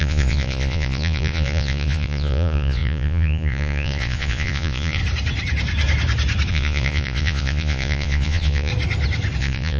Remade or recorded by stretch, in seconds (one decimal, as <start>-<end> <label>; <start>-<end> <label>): 0.0-5.0 remade; 5.0-6.5 recorded; 6.5-8.7 remade; 8.7-9.4 recorded; 9.4-9.8 remade